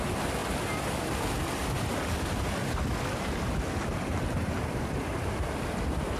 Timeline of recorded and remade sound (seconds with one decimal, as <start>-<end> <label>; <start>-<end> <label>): 0.0-6.2 recorded